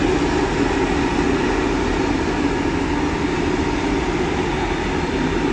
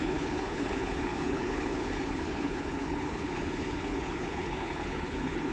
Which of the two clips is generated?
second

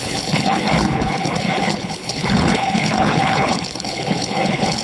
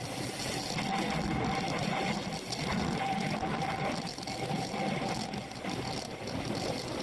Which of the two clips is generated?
first